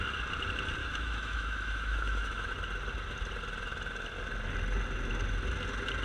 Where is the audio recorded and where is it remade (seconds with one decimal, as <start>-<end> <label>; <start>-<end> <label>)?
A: 0.0-0.8 recorded; 0.8-2.5 remade; 2.5-6.0 recorded